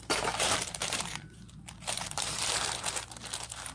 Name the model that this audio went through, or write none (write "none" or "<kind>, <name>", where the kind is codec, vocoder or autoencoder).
vocoder, BigVGAN v2